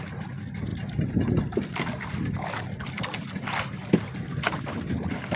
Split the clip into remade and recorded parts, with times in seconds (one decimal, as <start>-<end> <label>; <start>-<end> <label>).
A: 0.0-3.4 recorded; 3.4-4.0 remade; 4.0-5.4 recorded